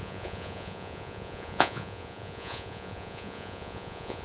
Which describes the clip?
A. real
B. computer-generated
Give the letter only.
B